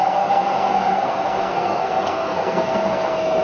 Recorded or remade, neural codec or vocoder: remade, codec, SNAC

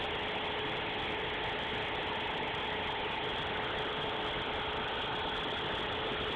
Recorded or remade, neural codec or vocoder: recorded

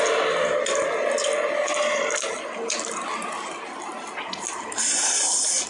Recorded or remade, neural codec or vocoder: recorded